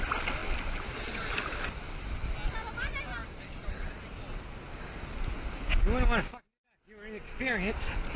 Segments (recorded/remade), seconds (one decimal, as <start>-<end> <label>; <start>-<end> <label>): 0.0-8.2 recorded